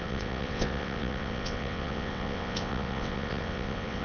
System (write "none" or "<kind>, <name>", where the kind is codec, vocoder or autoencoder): vocoder, WaveNeXt